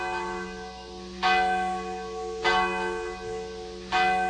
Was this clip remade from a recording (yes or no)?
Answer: no